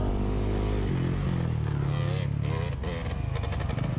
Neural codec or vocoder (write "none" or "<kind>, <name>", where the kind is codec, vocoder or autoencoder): none